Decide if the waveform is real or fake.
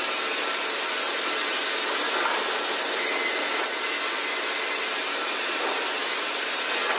real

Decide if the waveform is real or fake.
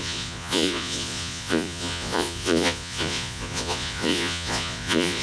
fake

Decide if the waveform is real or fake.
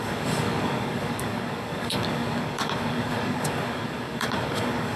fake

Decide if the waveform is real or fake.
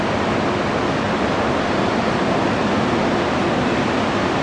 real